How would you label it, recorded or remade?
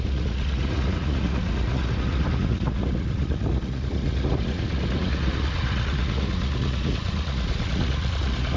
remade